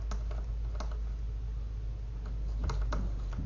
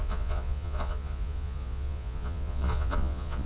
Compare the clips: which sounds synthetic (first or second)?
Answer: second